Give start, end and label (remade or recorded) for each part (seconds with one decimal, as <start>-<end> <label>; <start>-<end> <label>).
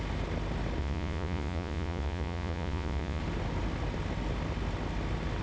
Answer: 0.0-0.8 recorded; 0.8-3.2 remade; 3.2-5.4 recorded